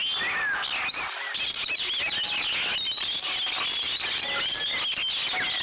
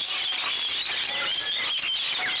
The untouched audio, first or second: first